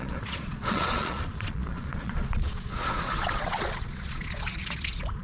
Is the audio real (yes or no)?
no